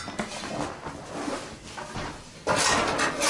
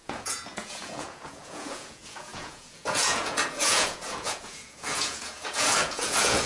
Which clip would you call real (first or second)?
first